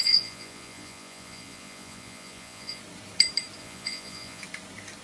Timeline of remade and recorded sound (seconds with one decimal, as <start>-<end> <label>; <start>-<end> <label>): 0.0-2.8 remade; 2.8-3.6 recorded; 3.6-4.4 remade; 4.4-5.0 recorded